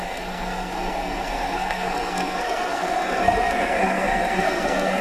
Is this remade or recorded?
remade